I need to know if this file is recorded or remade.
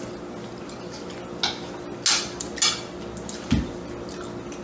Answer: recorded